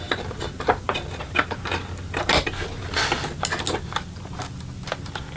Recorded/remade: recorded